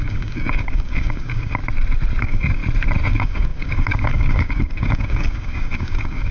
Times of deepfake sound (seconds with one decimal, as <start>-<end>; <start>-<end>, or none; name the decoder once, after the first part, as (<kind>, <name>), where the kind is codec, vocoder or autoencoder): 0.0-1.6 (codec, DAC); 2.2-2.6; 3.1-6.3